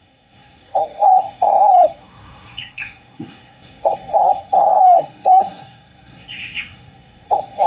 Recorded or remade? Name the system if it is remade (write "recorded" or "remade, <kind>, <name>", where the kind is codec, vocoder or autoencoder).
remade, codec, SNAC